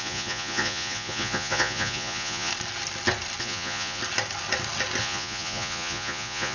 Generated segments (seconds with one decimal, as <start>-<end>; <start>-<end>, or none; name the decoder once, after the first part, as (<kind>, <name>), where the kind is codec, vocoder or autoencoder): 0.0-2.5 (vocoder, Vocos); 3.4-4.0; 5.0-6.5